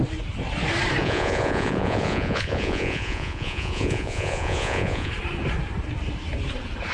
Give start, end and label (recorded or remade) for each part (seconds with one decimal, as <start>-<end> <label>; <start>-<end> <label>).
0.0-1.0 recorded; 1.0-5.1 remade; 5.1-6.9 recorded